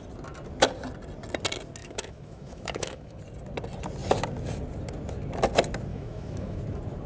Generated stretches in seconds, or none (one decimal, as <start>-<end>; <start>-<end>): 1.8-3.2; 5.9-6.6